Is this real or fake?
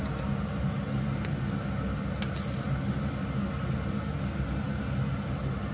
real